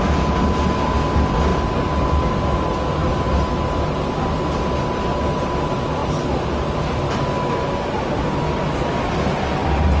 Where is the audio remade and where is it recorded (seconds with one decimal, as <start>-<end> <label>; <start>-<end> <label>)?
0.0-10.0 recorded

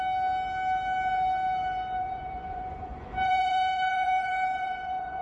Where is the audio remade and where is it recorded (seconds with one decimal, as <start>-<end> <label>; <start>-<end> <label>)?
0.0-2.0 recorded; 2.0-5.2 remade